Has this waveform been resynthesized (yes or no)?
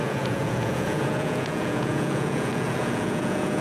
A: yes